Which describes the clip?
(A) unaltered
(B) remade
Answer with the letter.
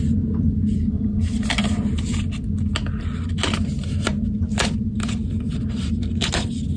A